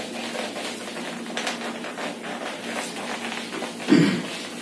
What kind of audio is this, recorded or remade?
recorded